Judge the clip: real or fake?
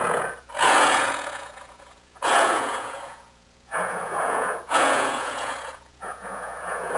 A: fake